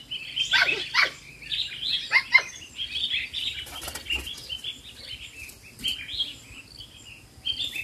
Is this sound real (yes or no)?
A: yes